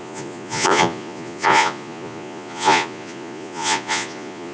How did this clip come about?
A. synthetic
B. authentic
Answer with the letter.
A